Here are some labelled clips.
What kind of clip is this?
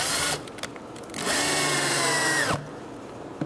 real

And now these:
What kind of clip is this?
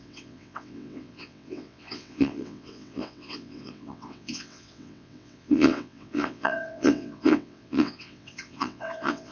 fake